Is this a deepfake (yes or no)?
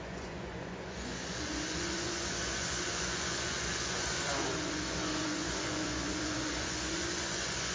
yes